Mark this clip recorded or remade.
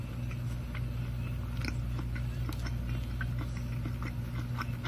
recorded